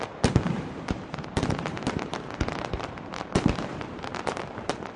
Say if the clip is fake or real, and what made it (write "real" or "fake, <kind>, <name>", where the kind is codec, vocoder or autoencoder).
fake, vocoder, BigVGAN v2